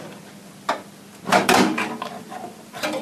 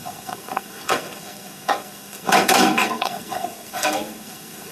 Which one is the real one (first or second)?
first